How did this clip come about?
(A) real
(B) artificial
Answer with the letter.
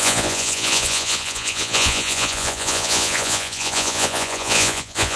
B